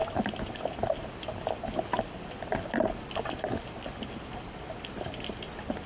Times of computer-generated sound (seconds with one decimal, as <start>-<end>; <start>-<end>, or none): none